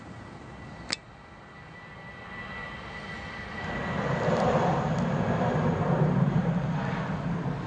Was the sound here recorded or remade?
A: recorded